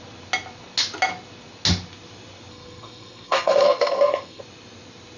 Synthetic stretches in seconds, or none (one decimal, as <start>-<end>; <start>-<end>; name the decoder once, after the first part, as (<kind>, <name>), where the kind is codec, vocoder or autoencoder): 2.5-4.4 (codec, SNAC)